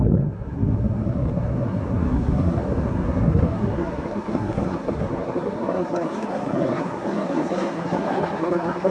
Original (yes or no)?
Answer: no